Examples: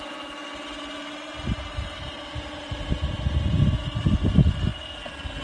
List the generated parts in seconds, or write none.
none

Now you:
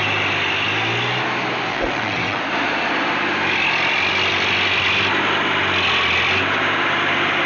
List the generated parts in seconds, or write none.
1.7-2.4 (vocoder, WaveNeXt)

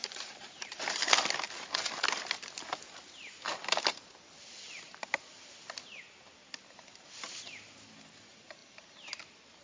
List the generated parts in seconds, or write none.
0.0-1.0 (vocoder, BigVGAN v2); 8.6-9.6